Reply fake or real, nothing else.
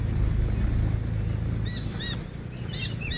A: real